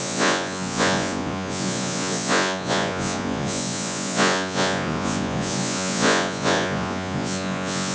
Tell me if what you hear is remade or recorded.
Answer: remade